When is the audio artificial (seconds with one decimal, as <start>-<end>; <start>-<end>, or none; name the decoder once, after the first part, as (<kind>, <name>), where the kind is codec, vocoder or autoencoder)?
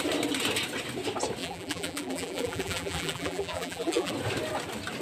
1.4-4.1 (vocoder, BigVGAN v2)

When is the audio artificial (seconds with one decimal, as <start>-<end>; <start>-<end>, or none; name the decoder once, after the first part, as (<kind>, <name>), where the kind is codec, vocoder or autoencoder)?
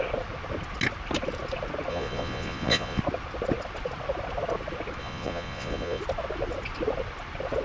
1.9-3.0 (vocoder, Vocos); 5.0-6.0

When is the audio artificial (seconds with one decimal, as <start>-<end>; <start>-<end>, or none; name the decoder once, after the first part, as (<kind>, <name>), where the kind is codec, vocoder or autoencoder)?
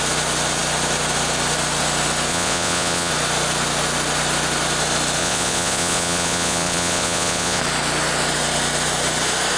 2.3-3.1 (vocoder, Vocos); 5.2-7.6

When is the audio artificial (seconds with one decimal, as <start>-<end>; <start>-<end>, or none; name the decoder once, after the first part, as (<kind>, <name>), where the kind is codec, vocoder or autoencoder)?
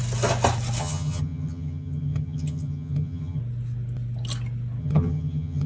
0.8-3.4 (vocoder, HiFi-GAN); 4.8-5.7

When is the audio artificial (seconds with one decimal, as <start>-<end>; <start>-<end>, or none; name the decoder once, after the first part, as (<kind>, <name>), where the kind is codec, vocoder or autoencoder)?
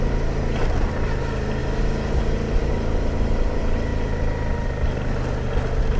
none